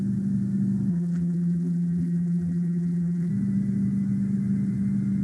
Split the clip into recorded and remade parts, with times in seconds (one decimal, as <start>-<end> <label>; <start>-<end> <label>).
0.0-0.9 recorded; 0.9-3.3 remade; 3.3-5.2 recorded